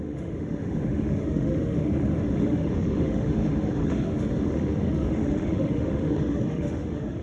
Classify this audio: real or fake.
fake